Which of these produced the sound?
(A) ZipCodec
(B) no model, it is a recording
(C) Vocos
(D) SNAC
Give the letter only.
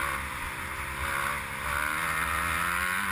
B